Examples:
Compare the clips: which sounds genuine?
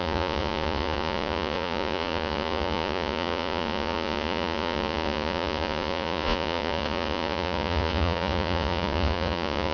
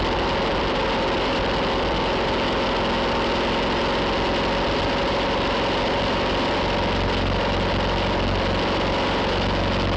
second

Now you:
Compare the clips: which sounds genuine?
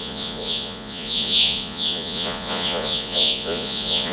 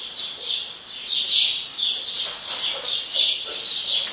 second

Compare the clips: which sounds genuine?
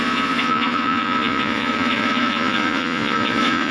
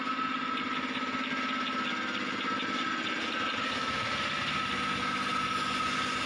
second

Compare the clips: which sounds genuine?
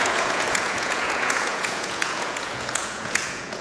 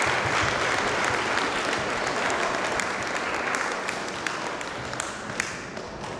second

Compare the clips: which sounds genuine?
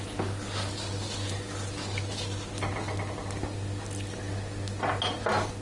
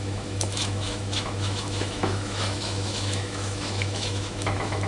first